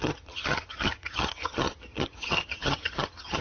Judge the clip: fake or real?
fake